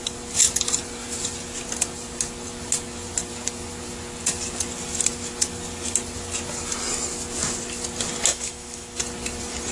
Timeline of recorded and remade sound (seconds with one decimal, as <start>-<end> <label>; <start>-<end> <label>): 0.0-8.3 recorded; 8.3-9.0 remade; 9.0-9.7 recorded